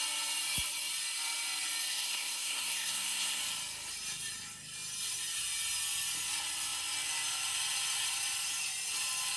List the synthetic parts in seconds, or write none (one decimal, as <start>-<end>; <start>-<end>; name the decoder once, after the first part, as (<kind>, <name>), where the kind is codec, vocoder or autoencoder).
1.9-3.4 (codec, SNAC)